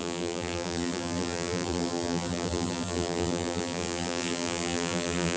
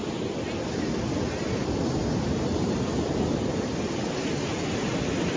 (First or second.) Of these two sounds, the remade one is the first